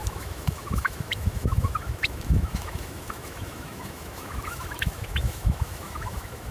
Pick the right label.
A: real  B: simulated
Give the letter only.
B